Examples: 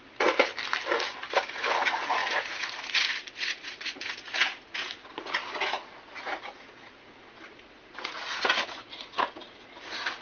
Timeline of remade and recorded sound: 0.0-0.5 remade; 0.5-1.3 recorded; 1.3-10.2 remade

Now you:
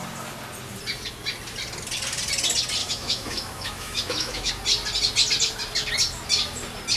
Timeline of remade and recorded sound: 0.0-2.8 recorded; 2.8-4.5 remade; 4.5-7.0 recorded

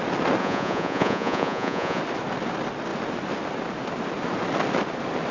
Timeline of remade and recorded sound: 0.0-0.4 recorded; 0.4-2.0 remade; 2.0-5.3 recorded

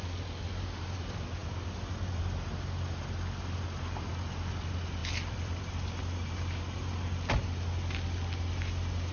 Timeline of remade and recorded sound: 0.0-5.0 recorded; 5.0-5.7 remade; 5.7-9.1 recorded

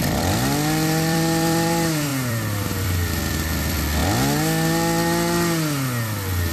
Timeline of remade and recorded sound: 0.0-4.0 remade; 4.0-6.5 recorded

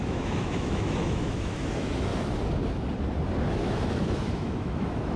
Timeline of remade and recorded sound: 0.0-2.1 remade; 2.1-3.5 recorded; 3.5-5.2 remade

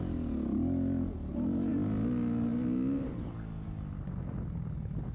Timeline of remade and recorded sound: 0.0-5.1 recorded